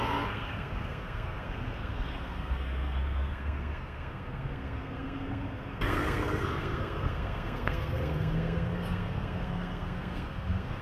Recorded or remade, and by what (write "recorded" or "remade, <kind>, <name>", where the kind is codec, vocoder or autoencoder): remade, codec, SNAC